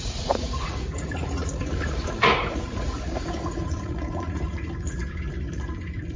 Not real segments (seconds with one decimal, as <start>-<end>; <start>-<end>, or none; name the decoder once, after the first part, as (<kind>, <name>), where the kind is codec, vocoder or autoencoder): 0.0-5.0 (vocoder, Vocos); 5.5-6.2